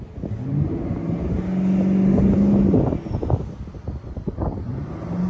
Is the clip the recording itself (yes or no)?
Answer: yes